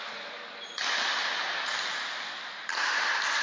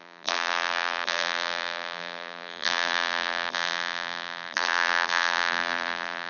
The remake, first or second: second